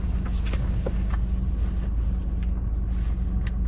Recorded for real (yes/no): yes